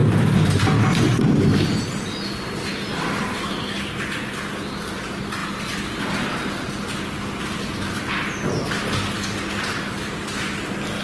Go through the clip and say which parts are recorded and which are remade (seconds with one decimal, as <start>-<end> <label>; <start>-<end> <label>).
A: 0.0-4.7 recorded; 4.7-5.4 remade; 5.4-9.9 recorded; 9.9-11.0 remade